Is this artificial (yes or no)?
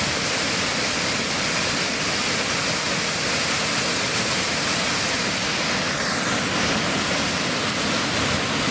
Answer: no